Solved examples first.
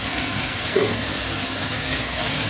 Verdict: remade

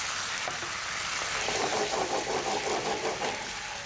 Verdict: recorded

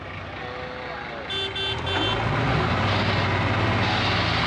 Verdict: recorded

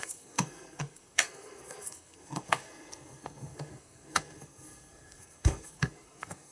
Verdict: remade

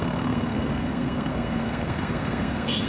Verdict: remade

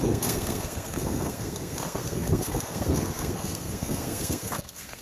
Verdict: remade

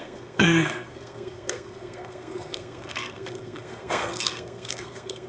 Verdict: remade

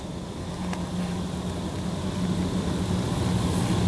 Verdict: recorded